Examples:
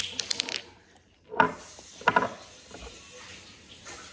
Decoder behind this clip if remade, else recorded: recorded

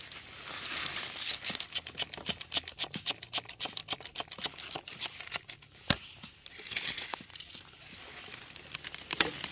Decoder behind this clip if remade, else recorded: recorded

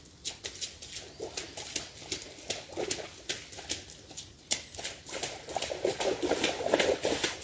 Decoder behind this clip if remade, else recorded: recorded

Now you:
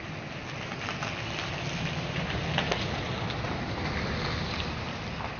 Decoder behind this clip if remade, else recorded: recorded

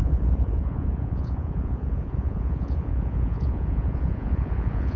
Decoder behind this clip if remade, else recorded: remade, vocoder, Vocos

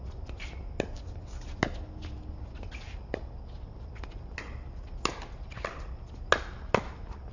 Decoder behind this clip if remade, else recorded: recorded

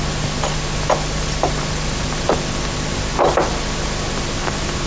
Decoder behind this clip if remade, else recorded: recorded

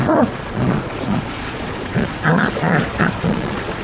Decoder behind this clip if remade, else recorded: remade, vocoder, Vocos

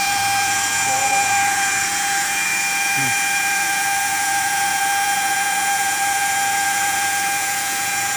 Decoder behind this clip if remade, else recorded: remade, vocoder, Vocos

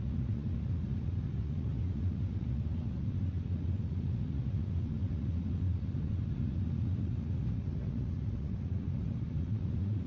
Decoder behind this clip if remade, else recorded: remade, vocoder, Vocos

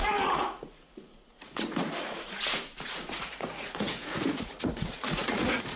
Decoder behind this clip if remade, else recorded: remade, vocoder, Vocos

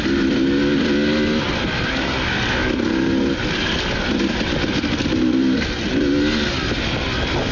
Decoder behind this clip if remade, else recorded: recorded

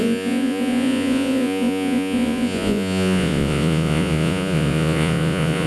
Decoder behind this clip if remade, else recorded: remade, vocoder, Vocos